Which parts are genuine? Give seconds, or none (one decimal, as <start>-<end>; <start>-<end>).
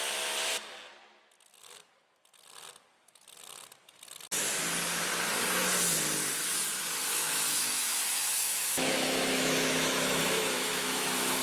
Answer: 0.0-7.1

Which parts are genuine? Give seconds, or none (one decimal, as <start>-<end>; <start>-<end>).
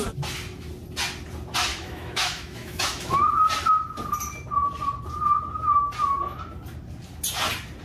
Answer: 0.0-1.7; 3.3-7.8